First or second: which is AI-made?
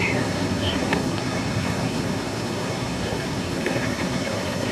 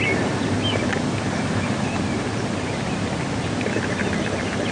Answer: first